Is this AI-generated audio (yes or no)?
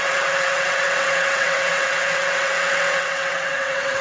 yes